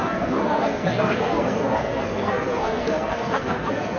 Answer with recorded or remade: remade